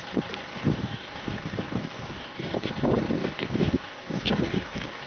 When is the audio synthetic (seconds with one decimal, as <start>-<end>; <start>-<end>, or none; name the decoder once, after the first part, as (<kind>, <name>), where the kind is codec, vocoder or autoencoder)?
0.5-2.7 (codec, DAC); 3.2-5.1